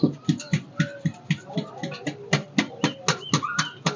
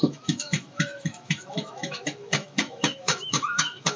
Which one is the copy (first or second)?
second